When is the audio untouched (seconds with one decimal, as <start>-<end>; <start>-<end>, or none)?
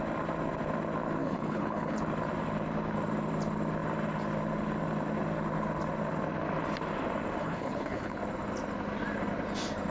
0.0-1.2; 2.0-7.4; 8.2-9.9